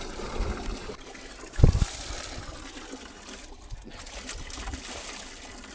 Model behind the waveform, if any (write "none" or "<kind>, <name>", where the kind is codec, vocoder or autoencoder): none